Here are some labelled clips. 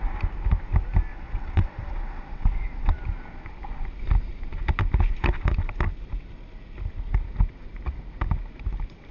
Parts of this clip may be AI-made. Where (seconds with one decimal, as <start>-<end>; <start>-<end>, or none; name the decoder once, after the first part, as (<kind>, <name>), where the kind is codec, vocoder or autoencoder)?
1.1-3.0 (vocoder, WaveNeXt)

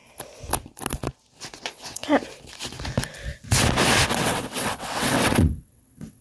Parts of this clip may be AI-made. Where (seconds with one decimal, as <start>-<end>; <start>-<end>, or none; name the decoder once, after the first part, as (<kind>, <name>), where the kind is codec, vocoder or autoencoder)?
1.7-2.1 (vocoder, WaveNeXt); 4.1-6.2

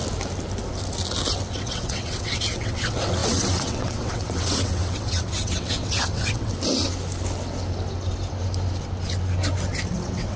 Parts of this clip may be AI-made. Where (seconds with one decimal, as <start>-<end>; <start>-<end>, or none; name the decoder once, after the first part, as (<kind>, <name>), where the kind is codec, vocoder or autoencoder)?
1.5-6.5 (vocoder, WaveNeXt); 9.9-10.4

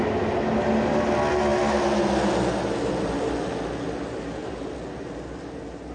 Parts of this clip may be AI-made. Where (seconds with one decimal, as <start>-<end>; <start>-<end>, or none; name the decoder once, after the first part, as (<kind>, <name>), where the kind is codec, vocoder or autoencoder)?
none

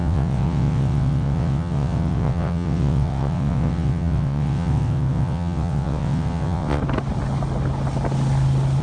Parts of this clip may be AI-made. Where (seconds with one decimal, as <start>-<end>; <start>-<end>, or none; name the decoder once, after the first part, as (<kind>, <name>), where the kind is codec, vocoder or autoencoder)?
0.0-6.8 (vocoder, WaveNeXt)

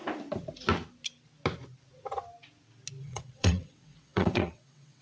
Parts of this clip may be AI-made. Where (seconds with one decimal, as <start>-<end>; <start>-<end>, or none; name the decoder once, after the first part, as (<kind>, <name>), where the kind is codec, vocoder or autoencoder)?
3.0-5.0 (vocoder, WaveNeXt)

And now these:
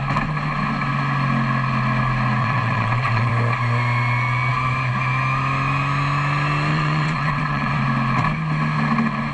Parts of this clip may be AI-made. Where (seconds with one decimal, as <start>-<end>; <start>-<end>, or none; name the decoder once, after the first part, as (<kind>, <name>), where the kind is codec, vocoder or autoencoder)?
2.4-3.3 (vocoder, WaveNeXt); 6.7-7.8

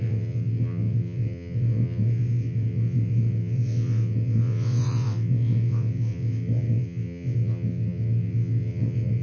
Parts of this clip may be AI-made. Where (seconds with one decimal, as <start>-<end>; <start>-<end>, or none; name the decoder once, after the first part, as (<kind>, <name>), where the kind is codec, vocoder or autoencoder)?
0.0-9.2 (vocoder, WaveNeXt)